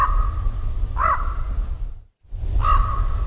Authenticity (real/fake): real